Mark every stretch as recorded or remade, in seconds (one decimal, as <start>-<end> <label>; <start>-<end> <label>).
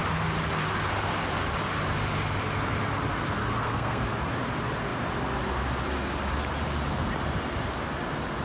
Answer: 0.0-3.4 recorded; 3.4-4.0 remade; 4.0-8.4 recorded